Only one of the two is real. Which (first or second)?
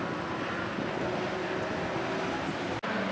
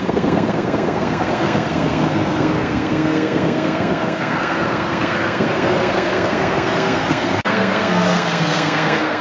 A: first